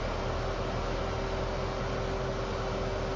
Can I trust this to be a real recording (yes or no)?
yes